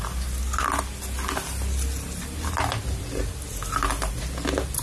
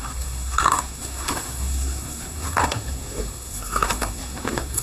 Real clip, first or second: first